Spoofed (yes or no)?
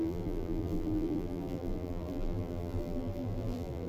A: yes